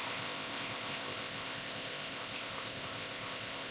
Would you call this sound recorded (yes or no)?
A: no